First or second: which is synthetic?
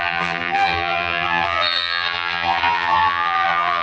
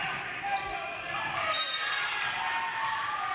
first